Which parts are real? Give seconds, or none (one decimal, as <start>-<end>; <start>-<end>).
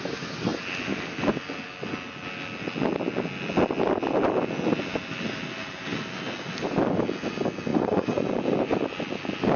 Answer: 0.0-7.7; 8.3-9.6